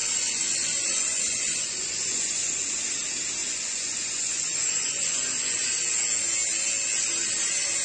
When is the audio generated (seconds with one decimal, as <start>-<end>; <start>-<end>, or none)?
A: 0.0-2.5; 3.4-5.7

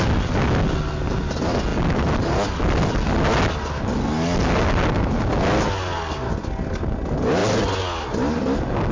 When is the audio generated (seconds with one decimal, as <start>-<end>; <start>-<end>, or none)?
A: none